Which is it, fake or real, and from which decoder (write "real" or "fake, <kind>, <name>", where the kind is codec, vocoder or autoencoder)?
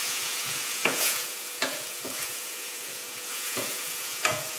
fake, vocoder, Vocos